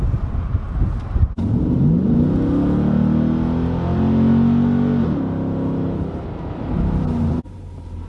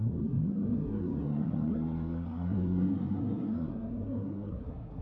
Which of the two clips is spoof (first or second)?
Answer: second